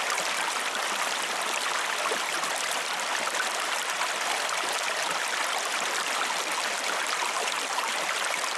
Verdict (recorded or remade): recorded